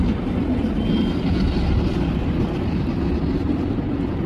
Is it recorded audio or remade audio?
recorded